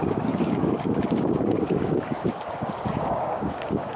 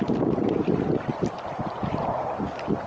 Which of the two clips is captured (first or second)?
second